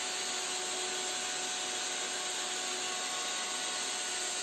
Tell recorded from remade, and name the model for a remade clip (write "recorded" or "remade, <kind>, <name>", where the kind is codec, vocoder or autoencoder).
recorded